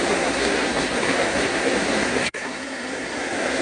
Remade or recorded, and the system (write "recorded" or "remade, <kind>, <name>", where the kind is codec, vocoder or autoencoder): remade, codec, SNAC